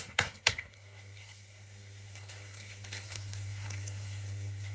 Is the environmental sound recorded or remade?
remade